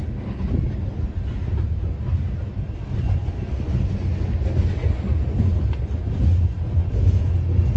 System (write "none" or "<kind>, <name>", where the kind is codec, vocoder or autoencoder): none